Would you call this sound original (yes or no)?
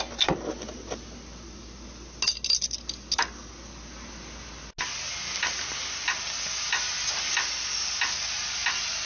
yes